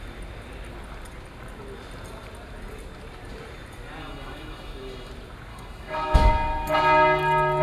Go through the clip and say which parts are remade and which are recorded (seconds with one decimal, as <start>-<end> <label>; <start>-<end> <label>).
0.0-4.0 recorded; 4.0-5.1 remade; 5.1-5.5 recorded; 5.5-6.3 remade; 6.3-7.6 recorded